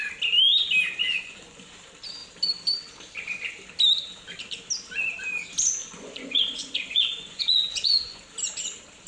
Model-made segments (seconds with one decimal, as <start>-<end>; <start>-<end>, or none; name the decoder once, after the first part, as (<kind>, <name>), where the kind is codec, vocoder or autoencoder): 1.0-1.7 (vocoder, Vocos); 5.8-8.2